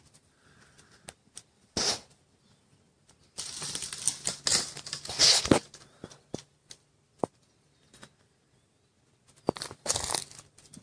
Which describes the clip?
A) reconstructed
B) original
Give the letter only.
B